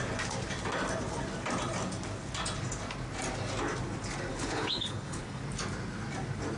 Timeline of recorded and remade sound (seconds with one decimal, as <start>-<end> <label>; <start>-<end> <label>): 0.0-4.3 recorded; 4.3-5.4 remade; 5.4-6.6 recorded